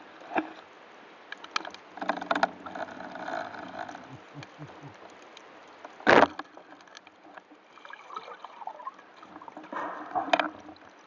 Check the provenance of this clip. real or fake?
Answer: real